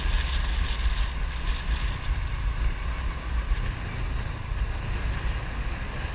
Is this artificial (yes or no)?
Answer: no